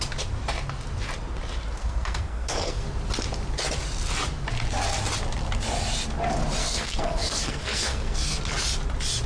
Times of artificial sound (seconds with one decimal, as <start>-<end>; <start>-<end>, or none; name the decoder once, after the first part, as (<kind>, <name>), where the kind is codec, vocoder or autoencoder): 1.8-2.9 (codec, SNAC); 6.6-8.4